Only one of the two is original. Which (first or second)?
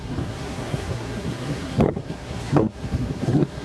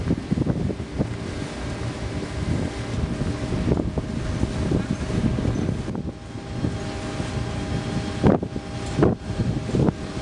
second